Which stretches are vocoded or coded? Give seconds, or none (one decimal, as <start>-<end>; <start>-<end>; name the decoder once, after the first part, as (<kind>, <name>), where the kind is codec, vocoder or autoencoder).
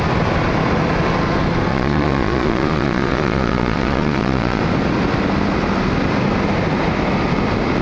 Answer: 1.7-4.6 (vocoder, Vocos)